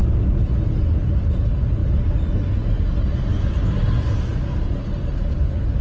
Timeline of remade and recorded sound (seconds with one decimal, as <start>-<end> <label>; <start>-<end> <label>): 0.0-5.8 recorded